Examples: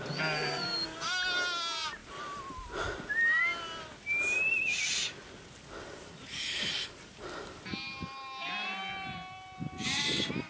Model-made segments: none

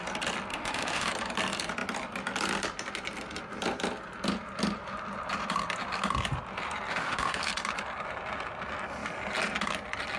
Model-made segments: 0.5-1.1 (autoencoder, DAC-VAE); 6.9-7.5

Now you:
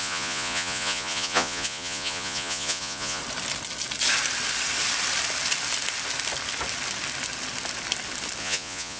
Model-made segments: 0.0-3.2 (vocoder, Vocos); 8.4-9.0

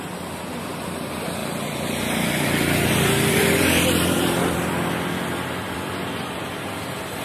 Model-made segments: 0.0-7.2 (vocoder, BigVGAN v2)

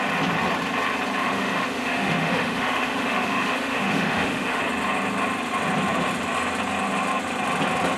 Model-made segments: 1.2-4.6 (autoencoder, DAC-VAE)

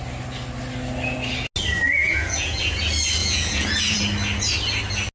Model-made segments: 2.0-2.8 (vocoder, Vocos); 3.2-4.0